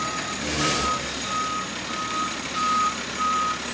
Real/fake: fake